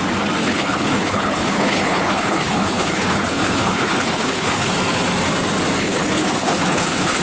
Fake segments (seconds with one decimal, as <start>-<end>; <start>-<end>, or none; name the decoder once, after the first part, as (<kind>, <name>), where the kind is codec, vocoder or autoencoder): 0.4-4.7 (codec, HILCodec); 5.8-7.2